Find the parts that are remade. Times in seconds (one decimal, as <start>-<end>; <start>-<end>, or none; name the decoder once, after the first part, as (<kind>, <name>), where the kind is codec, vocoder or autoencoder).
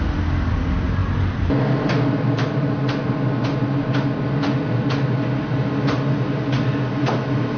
none